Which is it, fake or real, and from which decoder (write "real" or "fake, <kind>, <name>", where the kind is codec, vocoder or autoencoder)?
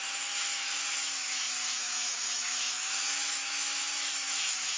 fake, autoencoder, DAC-VAE